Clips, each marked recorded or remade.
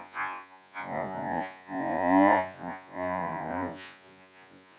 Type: remade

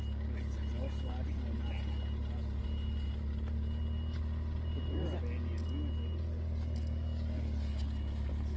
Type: recorded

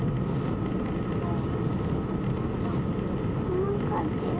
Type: recorded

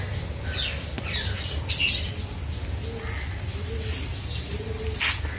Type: recorded